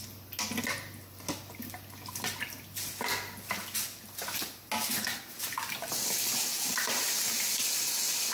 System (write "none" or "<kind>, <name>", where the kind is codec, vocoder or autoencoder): none